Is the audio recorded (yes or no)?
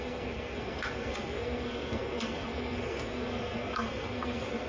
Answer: no